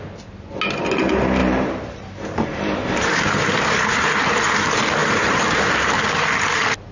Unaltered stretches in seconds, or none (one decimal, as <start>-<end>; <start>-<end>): 0.0-1.4; 4.5-5.0; 5.6-6.9

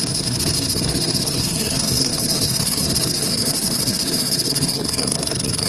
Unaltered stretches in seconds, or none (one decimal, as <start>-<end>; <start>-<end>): none